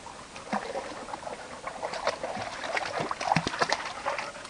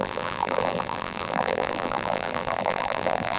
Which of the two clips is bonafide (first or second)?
first